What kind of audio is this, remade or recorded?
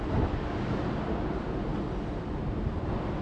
recorded